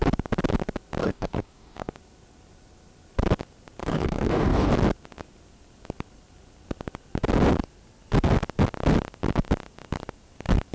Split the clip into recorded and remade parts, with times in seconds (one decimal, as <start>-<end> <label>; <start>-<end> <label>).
0.0-1.0 recorded; 1.0-1.9 remade; 1.9-3.8 recorded; 3.8-4.7 remade; 4.7-10.7 recorded